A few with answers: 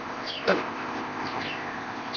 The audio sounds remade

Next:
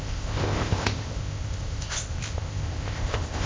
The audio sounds remade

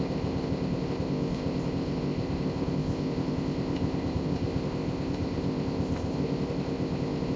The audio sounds remade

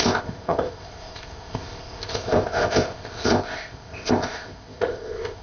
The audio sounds remade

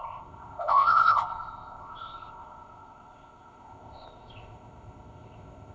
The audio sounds remade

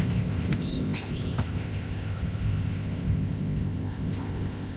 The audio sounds remade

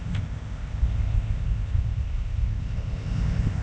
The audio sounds remade